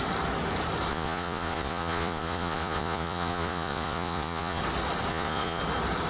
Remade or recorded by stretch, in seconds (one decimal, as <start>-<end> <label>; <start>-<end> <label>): 0.0-0.9 recorded; 0.9-4.6 remade; 4.6-5.1 recorded; 5.1-5.6 remade; 5.6-6.1 recorded